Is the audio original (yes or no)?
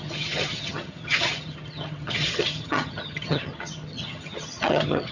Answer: no